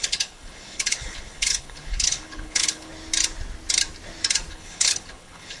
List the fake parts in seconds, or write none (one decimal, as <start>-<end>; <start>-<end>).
0.0-2.9; 4.5-5.6